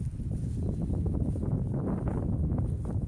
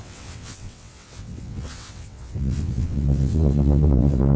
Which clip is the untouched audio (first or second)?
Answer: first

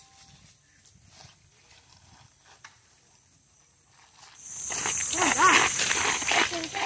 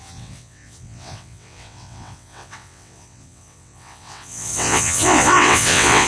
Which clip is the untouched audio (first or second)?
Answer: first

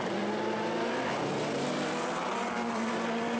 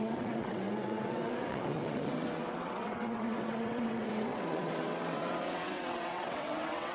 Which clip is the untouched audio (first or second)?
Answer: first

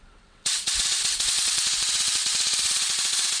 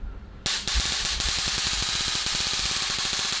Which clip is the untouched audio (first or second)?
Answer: second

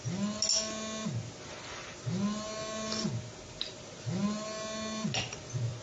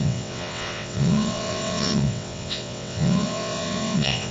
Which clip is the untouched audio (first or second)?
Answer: first